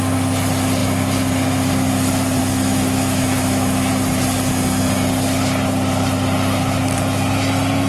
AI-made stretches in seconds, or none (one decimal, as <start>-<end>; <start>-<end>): 2.4-3.9